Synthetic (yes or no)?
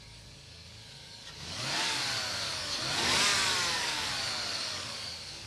yes